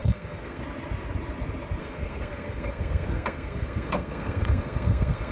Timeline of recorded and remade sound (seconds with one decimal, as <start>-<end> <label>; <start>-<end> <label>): 0.0-0.6 remade; 0.6-1.8 recorded; 1.8-5.3 remade

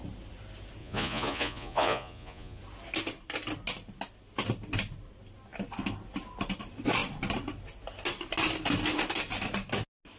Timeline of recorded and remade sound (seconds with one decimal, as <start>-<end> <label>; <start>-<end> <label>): 0.0-0.8 recorded; 0.8-2.6 remade; 2.6-10.2 recorded

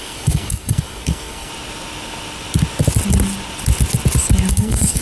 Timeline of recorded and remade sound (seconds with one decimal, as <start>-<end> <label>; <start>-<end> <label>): 0.0-1.5 remade; 1.5-4.5 recorded; 4.5-5.0 remade